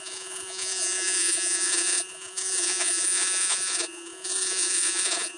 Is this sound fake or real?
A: fake